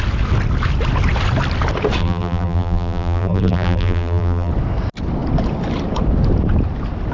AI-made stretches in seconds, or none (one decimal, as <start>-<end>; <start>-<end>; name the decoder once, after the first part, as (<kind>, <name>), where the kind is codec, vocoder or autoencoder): 2.0-4.5 (vocoder, BigVGAN v2)

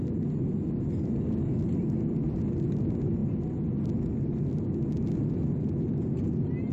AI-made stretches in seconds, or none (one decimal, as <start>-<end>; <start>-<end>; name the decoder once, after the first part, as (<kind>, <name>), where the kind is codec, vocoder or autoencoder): 3.2-4.3 (vocoder, BigVGAN v2)

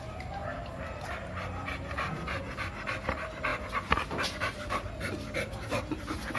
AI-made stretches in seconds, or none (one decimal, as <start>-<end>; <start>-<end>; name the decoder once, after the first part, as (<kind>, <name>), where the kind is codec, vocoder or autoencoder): 0.4-1.1 (vocoder, BigVGAN v2)